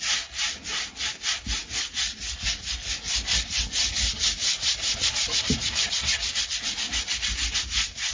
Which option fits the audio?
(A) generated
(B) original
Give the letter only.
B